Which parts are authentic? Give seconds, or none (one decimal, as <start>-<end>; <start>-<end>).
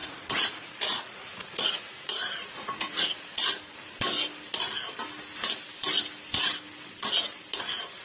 3.4-8.0